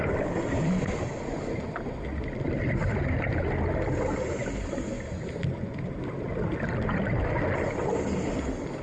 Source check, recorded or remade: recorded